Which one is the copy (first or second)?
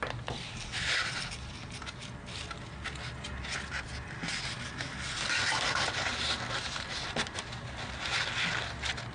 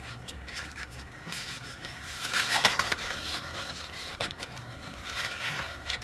second